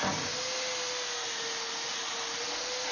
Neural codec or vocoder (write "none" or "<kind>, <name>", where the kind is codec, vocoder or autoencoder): none